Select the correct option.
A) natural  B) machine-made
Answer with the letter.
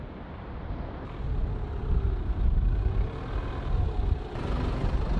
A